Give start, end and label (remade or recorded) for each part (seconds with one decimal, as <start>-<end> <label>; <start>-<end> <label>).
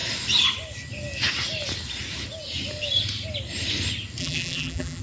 0.0-4.2 recorded; 4.2-5.0 remade